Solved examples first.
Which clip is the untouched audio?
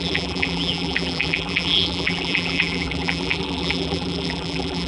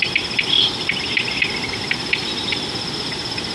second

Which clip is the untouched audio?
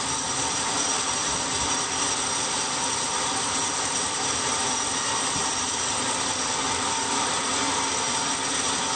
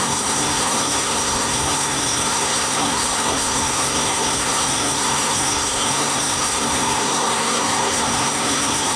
first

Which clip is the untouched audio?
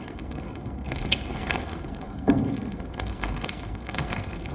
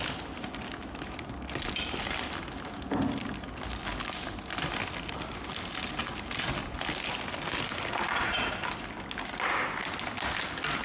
second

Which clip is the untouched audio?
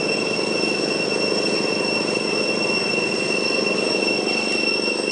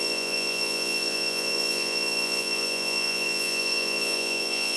first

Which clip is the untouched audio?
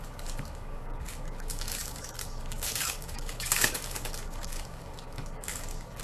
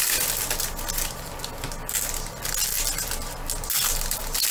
second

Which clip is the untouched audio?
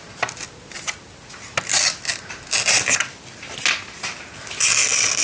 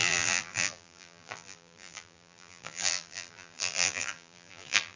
first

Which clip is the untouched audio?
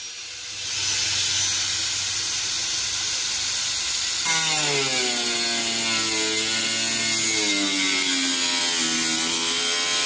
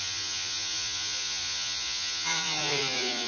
first